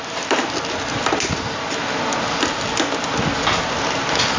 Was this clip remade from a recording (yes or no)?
no